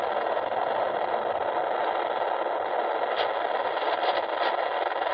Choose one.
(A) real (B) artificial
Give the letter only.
A